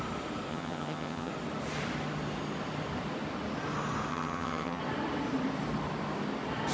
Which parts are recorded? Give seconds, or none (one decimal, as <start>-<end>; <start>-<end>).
0.0-0.5; 1.3-4.1; 4.8-6.7